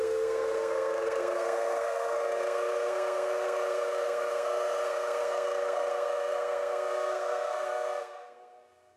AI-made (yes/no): yes